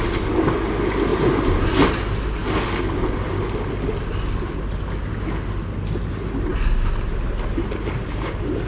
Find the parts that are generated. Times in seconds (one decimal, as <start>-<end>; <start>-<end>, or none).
none